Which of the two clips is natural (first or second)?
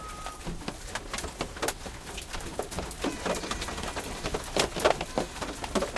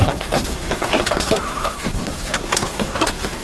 first